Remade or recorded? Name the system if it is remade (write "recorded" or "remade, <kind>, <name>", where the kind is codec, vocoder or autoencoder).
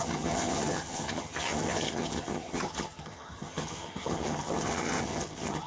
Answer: remade, vocoder, HiFi-GAN